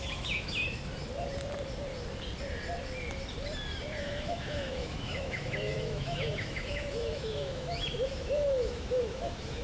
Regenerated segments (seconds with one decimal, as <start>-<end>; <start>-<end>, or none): 0.0-0.6; 4.0-9.6